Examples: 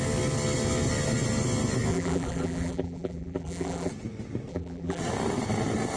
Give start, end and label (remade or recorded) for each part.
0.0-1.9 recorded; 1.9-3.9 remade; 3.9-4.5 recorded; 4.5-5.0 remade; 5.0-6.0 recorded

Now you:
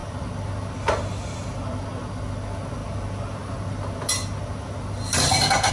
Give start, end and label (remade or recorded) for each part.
0.0-5.7 recorded

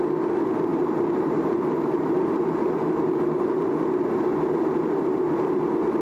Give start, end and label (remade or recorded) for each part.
0.0-0.7 recorded; 0.7-3.8 remade; 3.8-6.0 recorded

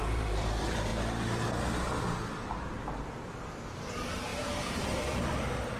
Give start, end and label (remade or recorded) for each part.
0.0-0.9 remade; 0.9-2.4 recorded; 2.4-2.8 remade; 2.8-3.8 recorded; 3.8-5.8 remade

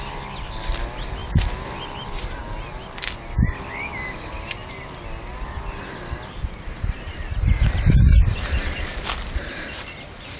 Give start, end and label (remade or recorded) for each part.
0.0-1.2 remade; 1.2-1.8 recorded; 1.8-2.4 remade; 2.4-3.6 recorded; 3.6-4.6 remade; 4.6-6.3 recorded; 6.3-10.4 remade

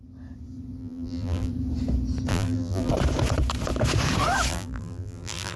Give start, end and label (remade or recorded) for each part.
0.0-0.8 recorded; 0.8-1.5 remade; 1.5-2.3 recorded; 2.3-2.9 remade; 2.9-4.5 recorded; 4.5-5.6 remade

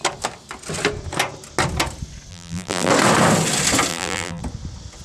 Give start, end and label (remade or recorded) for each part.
0.0-2.3 recorded; 2.3-2.9 remade; 2.9-3.9 recorded; 3.9-4.4 remade; 4.4-5.0 recorded